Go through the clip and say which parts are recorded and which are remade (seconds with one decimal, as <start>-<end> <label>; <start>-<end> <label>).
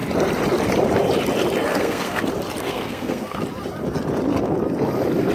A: 0.0-1.7 recorded; 1.7-2.2 remade; 2.2-2.6 recorded; 2.6-3.4 remade; 3.4-5.3 recorded